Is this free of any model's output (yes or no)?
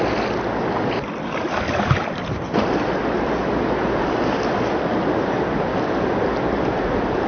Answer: yes